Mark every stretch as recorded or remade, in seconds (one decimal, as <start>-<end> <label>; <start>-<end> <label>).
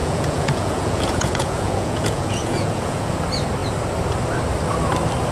0.0-3.2 remade; 3.2-5.3 recorded